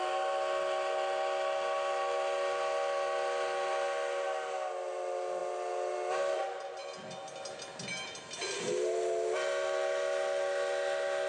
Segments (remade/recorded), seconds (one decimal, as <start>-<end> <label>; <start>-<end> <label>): 0.0-11.3 recorded